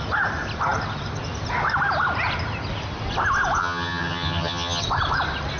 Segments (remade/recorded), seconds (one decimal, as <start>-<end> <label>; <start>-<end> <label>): 0.0-3.6 recorded; 3.6-4.8 remade; 4.8-5.6 recorded